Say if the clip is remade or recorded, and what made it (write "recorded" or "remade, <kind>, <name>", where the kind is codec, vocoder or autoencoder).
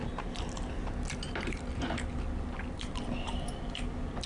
recorded